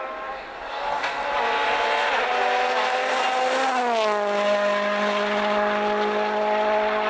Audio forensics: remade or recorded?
recorded